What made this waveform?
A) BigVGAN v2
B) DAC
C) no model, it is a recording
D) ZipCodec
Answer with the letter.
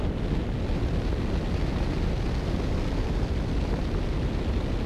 C